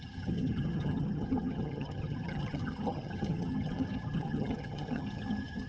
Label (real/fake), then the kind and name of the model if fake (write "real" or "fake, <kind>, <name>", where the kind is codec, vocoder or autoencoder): fake, vocoder, HiFi-GAN